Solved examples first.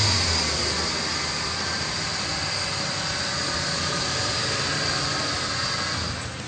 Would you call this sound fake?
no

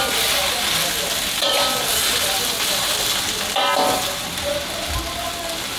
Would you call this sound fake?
no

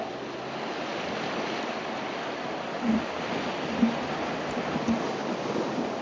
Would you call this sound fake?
no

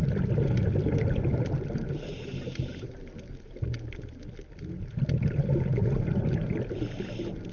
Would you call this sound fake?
no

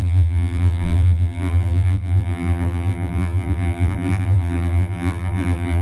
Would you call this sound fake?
yes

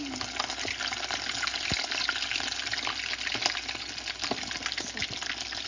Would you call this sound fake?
no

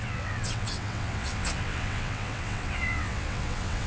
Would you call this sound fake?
yes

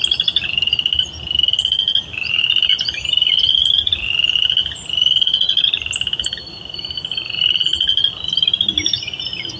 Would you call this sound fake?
no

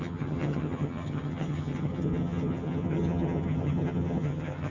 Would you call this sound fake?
yes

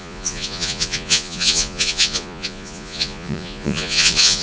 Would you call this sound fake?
yes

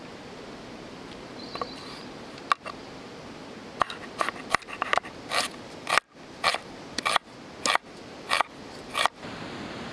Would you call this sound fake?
no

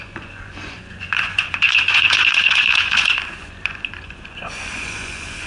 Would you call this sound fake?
yes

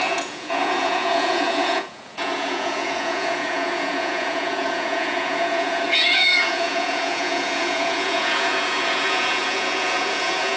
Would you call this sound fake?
yes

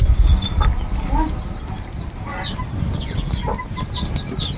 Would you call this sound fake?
no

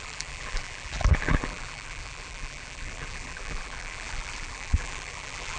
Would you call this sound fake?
yes